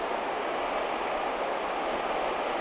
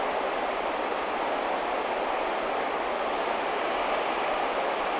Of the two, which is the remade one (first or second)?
second